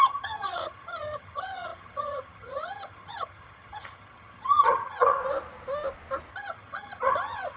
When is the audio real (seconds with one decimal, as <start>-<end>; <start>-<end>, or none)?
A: 5.2-6.3